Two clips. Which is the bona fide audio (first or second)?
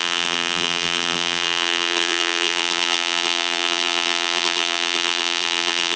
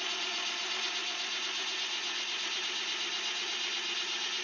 second